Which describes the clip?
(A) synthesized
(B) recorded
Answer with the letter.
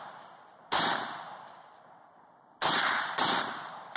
B